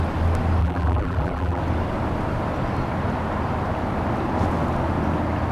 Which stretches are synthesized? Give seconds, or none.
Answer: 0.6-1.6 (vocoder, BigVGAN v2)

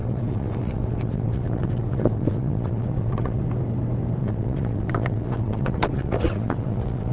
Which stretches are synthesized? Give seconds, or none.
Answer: 0.0-3.4 (vocoder, WaveNeXt); 4.2-7.1

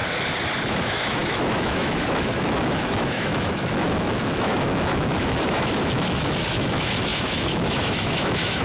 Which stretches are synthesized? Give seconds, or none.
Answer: 0.7-8.6 (autoencoder, DAC-VAE)

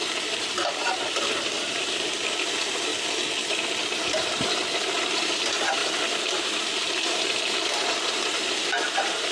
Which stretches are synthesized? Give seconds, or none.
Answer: 0.0-2.9 (vocoder, BigVGAN v2); 3.8-9.3

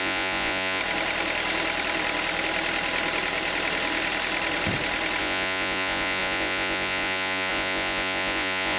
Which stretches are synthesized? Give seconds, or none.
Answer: 0.0-0.8 (vocoder, Vocos); 5.2-8.8

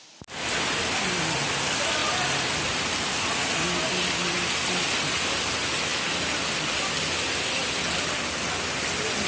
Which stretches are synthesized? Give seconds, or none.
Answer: none

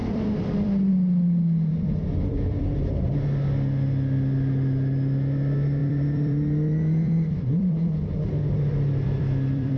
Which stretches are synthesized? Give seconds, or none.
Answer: 0.0-0.9 (vocoder, BigVGAN v2); 1.7-3.1; 5.8-9.8